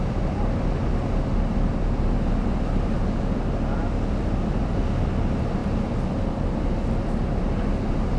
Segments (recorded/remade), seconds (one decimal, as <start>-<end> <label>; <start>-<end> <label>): 0.0-5.6 remade; 5.6-6.6 recorded; 6.6-8.2 remade